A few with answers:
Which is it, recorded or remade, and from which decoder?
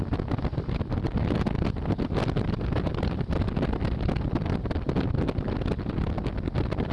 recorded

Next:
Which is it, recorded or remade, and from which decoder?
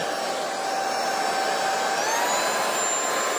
recorded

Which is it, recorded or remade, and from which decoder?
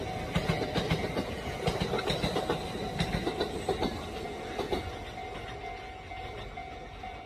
recorded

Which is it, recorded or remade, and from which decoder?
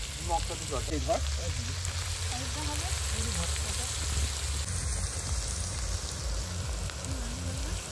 recorded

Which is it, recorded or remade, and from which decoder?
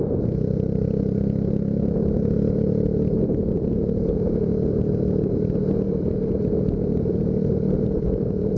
remade, vocoder, BigVGAN v2